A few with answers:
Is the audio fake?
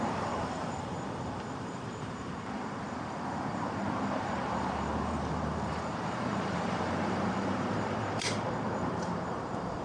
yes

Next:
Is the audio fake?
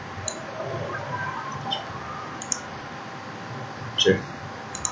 no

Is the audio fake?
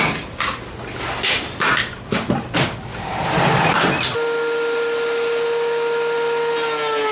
no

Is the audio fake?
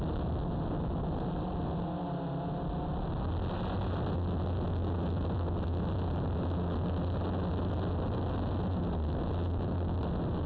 no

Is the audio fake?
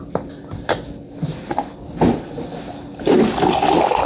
no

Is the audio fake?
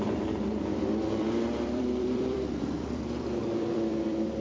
yes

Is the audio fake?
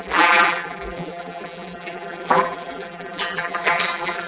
yes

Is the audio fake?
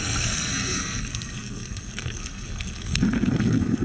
yes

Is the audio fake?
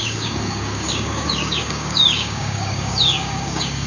yes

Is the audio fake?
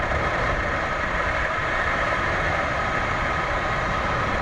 yes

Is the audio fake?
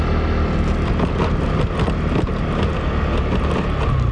no